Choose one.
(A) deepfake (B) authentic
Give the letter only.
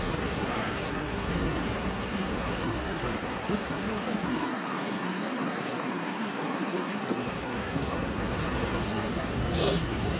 A